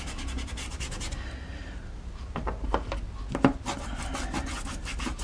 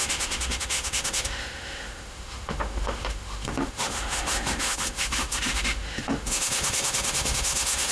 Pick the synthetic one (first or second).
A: second